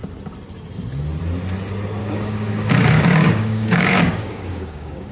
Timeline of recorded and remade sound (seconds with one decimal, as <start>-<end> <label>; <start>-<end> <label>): 0.0-2.0 recorded; 2.0-5.1 remade